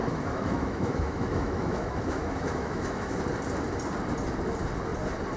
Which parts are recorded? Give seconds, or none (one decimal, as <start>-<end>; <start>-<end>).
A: 3.2-5.4